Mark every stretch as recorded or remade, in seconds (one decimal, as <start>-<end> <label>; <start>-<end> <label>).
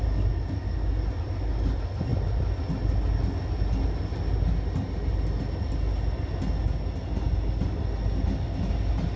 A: 0.0-9.2 recorded